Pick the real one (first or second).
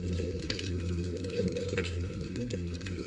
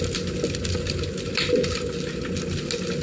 second